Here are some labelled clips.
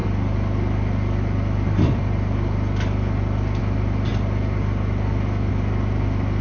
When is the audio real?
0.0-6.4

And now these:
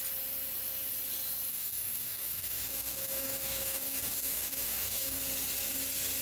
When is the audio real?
0.0-1.5; 5.2-6.2

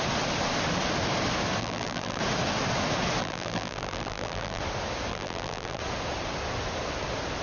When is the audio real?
0.0-1.6; 2.2-3.2; 4.6-5.1; 5.8-7.4

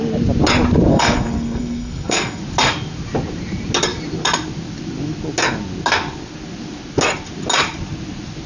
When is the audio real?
0.0-0.9; 2.4-8.5

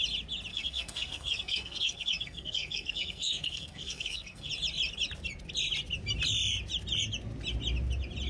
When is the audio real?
0.0-0.5; 4.5-8.3

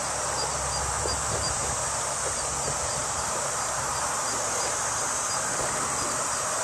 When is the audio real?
0.0-3.0